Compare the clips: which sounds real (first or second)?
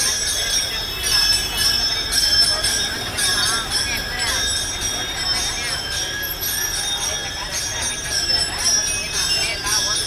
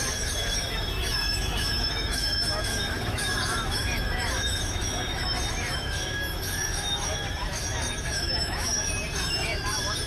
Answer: first